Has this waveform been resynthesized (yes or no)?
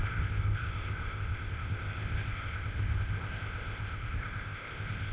yes